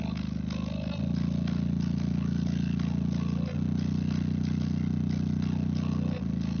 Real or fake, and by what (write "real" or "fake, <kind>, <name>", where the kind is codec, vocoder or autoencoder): real